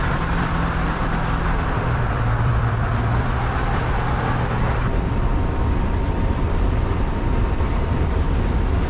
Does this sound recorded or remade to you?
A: remade